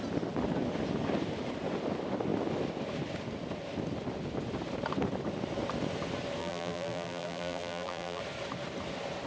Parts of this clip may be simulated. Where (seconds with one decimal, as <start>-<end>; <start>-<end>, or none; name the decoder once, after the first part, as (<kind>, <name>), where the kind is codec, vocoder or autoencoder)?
6.4-8.2 (vocoder, BigVGAN v2)